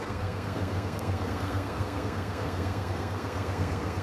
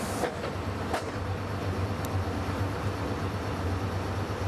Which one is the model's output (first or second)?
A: first